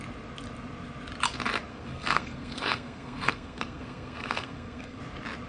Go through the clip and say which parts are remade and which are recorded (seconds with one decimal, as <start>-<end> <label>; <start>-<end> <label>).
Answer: 0.0-1.7 recorded; 1.7-5.0 remade; 5.0-5.5 recorded